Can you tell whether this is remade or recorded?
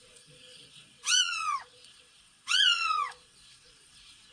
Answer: remade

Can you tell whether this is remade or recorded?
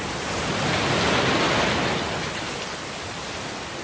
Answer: recorded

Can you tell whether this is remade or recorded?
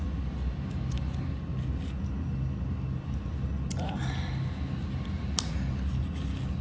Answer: recorded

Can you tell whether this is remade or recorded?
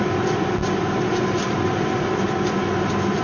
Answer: recorded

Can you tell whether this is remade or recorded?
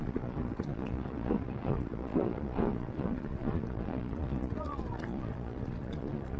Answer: remade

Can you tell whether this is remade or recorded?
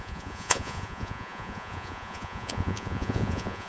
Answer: remade